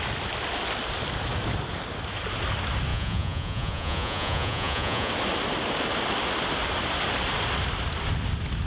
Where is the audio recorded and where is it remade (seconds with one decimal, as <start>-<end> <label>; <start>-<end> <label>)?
0.0-2.9 recorded; 2.9-5.1 remade; 5.1-8.7 recorded